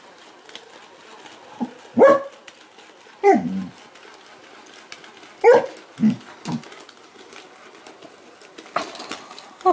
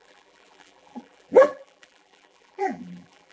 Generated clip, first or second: second